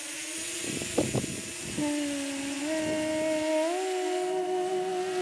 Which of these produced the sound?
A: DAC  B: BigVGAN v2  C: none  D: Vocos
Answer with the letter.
C